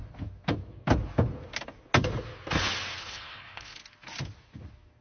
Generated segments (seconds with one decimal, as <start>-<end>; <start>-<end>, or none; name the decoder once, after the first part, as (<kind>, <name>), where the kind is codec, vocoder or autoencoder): 3.0-3.8 (codec, HILCodec)